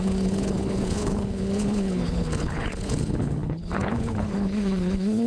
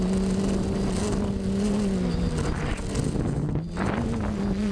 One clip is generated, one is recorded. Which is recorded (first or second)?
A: second